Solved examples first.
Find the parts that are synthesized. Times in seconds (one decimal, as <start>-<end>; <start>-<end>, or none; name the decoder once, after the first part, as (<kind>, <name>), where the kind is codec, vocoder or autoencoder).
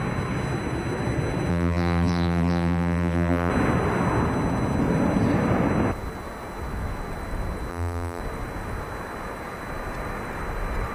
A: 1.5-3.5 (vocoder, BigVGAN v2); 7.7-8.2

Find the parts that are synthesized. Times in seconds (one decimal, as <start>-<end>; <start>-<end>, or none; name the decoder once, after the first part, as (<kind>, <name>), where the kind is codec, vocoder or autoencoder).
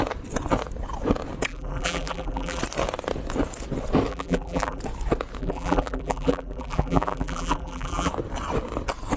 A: 1.5-2.6 (vocoder, BigVGAN v2); 4.1-4.8; 5.4-8.1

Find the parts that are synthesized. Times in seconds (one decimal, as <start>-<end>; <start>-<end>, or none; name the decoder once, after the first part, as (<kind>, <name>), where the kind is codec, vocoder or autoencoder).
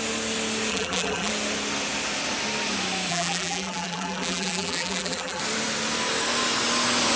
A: 0.7-1.3 (vocoder, BigVGAN v2); 3.1-5.4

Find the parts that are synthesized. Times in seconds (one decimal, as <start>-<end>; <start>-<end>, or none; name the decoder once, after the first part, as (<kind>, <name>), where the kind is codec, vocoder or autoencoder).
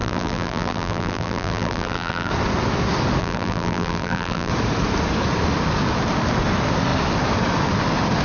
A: 0.0-2.3 (vocoder, BigVGAN v2); 3.2-4.5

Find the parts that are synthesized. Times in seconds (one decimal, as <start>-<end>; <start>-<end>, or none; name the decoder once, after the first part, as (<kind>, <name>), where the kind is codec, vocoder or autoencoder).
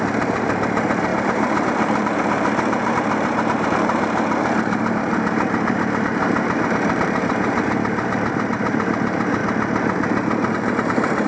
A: 0.0-9.4 (vocoder, BigVGAN v2); 10.5-11.3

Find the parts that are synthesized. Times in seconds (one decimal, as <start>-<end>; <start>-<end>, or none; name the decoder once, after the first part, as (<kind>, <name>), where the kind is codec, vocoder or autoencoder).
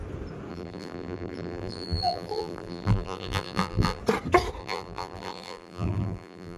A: 0.5-4.0 (vocoder, BigVGAN v2); 4.6-6.6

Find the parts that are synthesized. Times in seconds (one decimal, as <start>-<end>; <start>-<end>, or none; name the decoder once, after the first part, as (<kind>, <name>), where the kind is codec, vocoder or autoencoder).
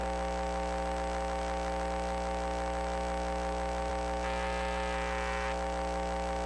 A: none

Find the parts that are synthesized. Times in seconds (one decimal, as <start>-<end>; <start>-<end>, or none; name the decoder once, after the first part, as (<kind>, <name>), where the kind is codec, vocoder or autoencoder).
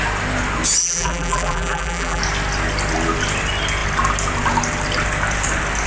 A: 0.8-2.2 (vocoder, BigVGAN v2)